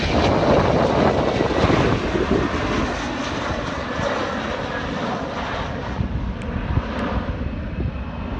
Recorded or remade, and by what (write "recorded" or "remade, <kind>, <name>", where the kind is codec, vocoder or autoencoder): recorded